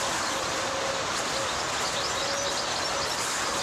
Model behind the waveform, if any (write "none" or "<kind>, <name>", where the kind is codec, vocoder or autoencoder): none